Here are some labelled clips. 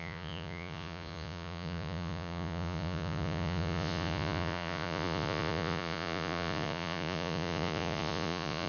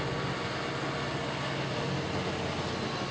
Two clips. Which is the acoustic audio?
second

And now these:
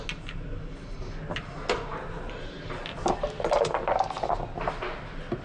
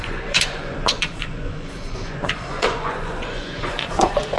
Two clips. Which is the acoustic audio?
first